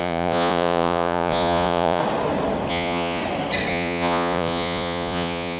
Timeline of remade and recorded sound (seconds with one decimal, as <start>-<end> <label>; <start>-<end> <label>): 0.0-2.0 remade; 2.0-2.7 recorded; 2.7-3.2 remade; 3.2-3.7 recorded; 3.7-5.6 remade